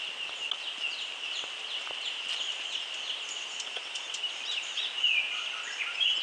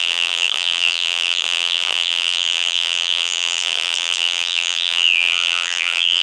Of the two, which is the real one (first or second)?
first